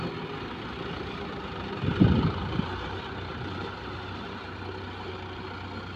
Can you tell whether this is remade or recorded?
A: recorded